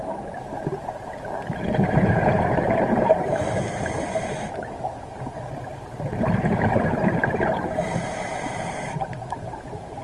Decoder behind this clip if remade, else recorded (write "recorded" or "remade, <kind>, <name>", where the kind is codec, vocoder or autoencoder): remade, vocoder, BigVGAN v2